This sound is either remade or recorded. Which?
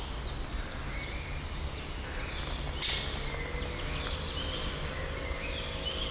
recorded